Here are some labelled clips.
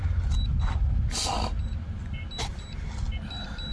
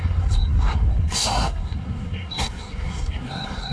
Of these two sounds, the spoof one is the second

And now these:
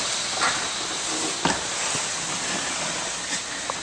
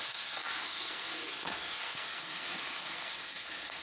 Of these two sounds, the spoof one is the second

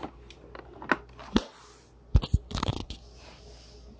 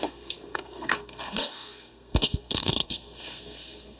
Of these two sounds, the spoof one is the second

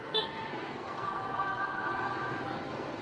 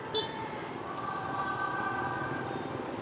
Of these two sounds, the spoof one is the first